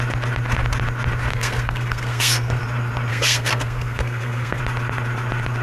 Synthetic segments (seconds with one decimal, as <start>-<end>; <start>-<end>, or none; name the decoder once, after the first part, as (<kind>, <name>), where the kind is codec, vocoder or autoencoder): 1.3-2.6 (codec, SNAC); 3.1-4.6